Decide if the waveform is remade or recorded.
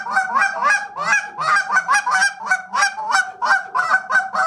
recorded